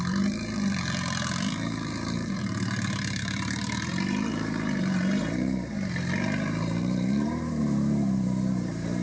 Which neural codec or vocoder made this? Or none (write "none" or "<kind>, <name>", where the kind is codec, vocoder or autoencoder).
vocoder, BigVGAN v2